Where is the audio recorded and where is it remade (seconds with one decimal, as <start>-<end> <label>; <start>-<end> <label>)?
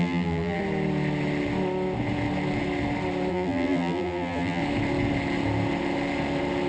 0.0-0.6 remade; 0.6-3.3 recorded; 3.3-4.6 remade; 4.6-6.7 recorded